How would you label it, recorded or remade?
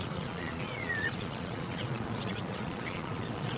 remade